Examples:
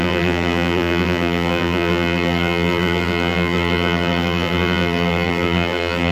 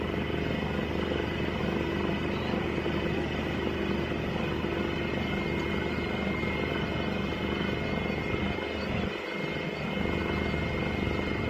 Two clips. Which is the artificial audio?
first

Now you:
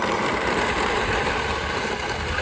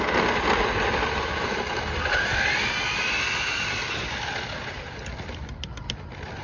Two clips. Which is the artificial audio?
first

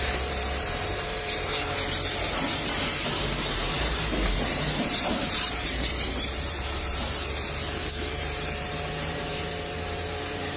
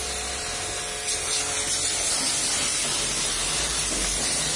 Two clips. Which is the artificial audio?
first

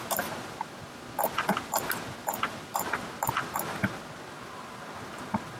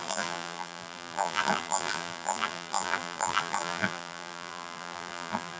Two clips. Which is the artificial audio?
second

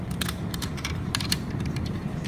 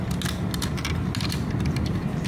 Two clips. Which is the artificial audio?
first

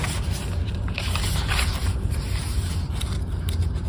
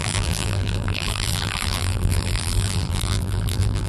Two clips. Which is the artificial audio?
second